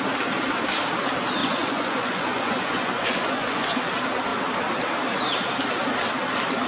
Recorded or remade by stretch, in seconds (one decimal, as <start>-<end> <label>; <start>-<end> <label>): 0.0-1.4 recorded; 1.4-3.8 remade; 3.8-6.7 recorded